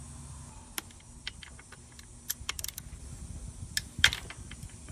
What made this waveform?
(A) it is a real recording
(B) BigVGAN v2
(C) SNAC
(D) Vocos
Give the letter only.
A